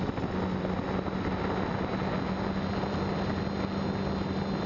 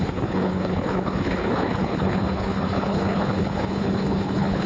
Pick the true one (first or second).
first